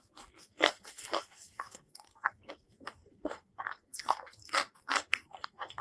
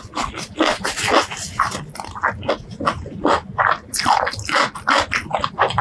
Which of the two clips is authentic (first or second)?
second